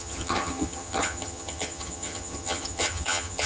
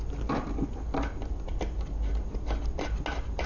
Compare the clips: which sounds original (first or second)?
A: second